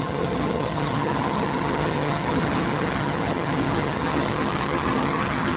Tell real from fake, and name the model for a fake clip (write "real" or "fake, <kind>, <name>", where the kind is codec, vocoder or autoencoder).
fake, vocoder, HiFi-GAN